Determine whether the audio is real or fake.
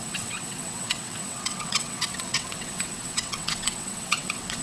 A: fake